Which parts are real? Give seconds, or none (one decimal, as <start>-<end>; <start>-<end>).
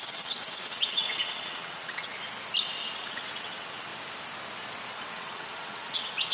2.1-3.0; 3.9-4.9